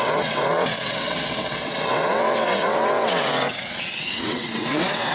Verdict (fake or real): fake